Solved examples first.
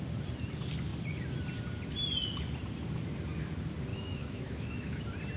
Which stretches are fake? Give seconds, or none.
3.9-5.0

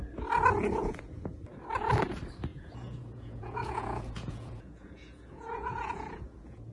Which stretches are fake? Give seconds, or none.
0.8-1.4; 2.5-6.7

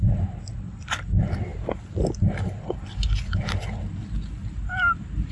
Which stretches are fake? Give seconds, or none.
none